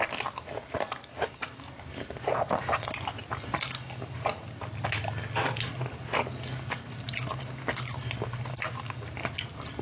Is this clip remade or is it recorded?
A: recorded